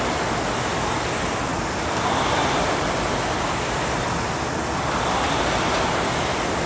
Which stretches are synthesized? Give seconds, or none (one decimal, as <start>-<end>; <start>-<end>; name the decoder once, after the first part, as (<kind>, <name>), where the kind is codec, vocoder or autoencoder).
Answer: none

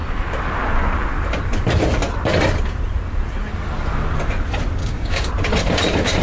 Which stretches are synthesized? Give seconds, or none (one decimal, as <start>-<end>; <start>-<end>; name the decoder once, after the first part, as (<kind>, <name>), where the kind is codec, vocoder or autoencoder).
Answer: 4.8-5.3 (codec, DAC)

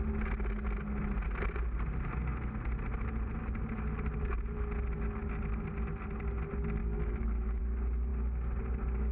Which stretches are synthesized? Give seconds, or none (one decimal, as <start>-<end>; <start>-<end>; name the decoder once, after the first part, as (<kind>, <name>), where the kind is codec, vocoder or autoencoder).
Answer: 6.8-7.6 (codec, DAC)

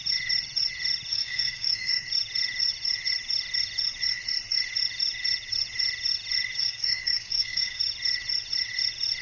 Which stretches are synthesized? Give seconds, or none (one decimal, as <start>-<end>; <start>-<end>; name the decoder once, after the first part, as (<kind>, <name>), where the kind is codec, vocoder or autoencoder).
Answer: 1.1-1.9 (codec, DAC); 6.6-7.8

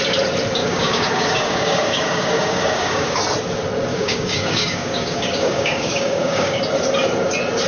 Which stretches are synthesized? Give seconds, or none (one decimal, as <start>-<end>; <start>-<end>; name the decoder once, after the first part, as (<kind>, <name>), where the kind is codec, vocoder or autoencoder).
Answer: 0.6-3.2 (codec, DAC); 3.9-6.6